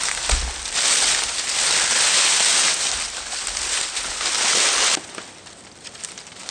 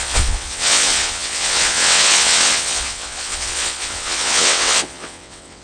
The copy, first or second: second